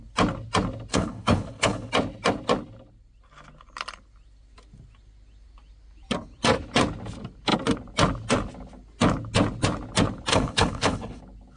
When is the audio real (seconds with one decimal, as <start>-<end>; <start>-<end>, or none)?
0.0-0.9; 1.9-10.3; 11.2-11.6